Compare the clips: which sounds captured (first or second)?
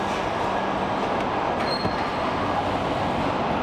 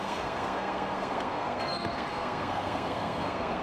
first